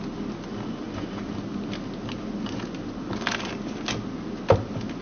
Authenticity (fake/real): real